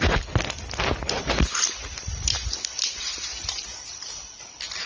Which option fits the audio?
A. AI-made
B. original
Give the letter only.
B